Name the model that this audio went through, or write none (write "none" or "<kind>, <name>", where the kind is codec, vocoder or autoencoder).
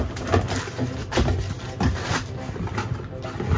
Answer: none